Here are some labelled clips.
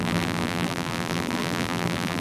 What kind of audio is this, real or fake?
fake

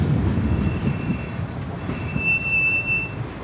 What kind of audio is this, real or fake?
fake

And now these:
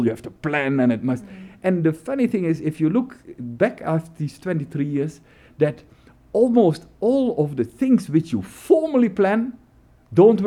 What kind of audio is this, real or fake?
real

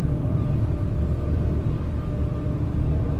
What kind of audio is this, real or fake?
fake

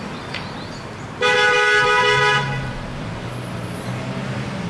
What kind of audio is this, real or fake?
real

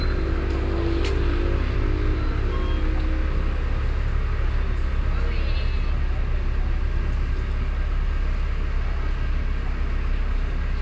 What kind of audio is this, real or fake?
real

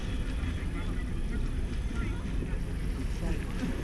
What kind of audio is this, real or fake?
real